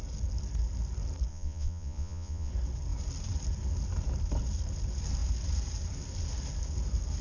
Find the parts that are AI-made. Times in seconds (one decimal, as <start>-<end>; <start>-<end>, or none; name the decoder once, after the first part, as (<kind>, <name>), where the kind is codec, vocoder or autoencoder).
1.3-2.5 (vocoder, Vocos)